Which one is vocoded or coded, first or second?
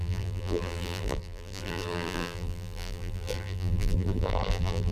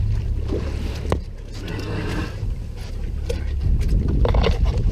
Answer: first